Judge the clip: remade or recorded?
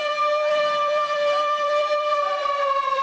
remade